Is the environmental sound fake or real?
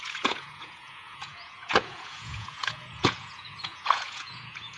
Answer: fake